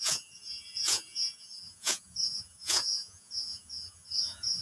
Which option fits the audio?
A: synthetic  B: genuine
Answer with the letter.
A